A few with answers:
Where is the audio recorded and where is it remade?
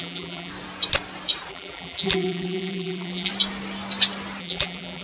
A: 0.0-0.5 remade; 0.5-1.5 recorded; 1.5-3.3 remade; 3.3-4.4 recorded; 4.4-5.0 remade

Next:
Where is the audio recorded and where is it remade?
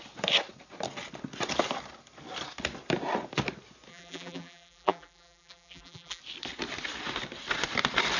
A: 0.0-3.9 recorded; 3.9-6.2 remade; 6.2-8.2 recorded